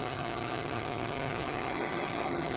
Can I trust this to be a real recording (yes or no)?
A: no